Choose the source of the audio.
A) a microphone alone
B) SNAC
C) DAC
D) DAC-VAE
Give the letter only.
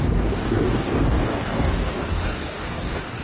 C